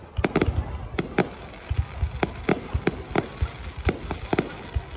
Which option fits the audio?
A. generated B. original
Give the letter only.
B